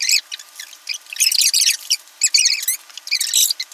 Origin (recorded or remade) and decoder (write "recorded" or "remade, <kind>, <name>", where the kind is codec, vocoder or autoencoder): recorded